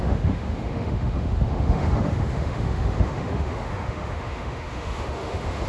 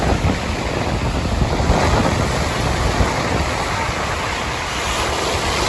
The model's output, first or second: first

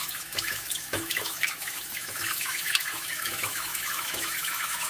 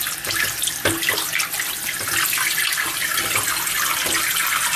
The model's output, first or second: first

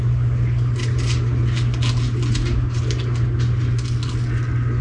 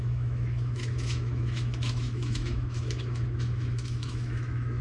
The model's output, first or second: second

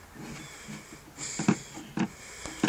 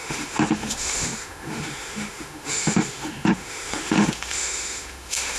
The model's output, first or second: second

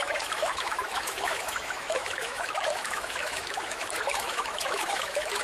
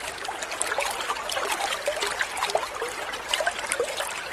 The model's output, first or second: first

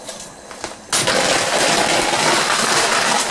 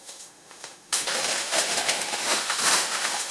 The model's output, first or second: second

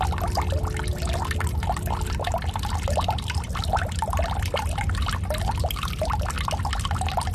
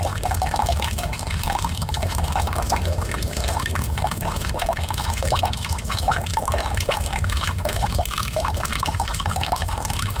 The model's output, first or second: second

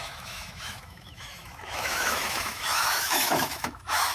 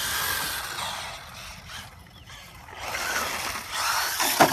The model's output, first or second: first